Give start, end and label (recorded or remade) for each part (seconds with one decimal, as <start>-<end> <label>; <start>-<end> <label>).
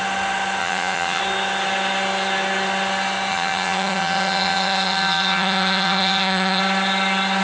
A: 0.0-0.6 recorded; 0.6-1.2 remade; 1.2-3.3 recorded; 3.3-6.6 remade; 6.6-7.4 recorded